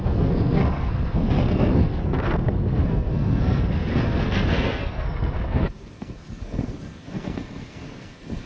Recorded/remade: remade